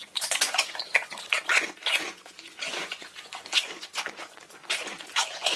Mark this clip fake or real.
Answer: fake